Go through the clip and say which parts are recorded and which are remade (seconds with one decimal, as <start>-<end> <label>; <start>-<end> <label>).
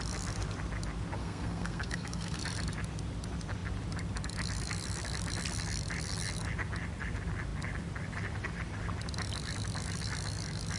0.0-1.2 recorded; 1.2-2.4 remade; 2.4-10.8 recorded